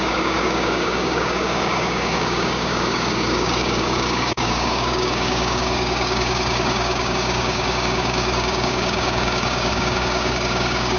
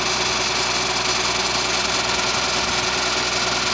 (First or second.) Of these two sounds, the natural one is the second